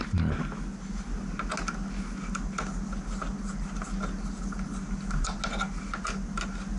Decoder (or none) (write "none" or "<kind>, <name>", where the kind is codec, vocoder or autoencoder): none